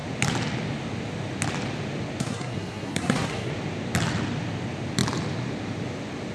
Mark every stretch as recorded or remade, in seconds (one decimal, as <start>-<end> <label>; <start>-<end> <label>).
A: 0.0-2.2 recorded; 2.2-3.5 remade; 3.5-6.3 recorded